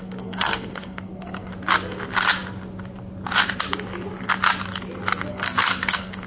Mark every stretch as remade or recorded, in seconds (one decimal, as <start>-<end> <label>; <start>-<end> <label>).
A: 0.0-1.5 remade; 1.5-5.3 recorded; 5.3-6.3 remade